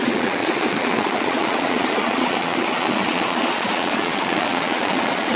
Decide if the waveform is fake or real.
fake